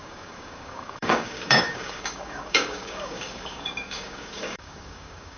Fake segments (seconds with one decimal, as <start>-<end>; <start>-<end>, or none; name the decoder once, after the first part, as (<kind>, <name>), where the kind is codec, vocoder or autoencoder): 0.0-5.4 (codec, DAC)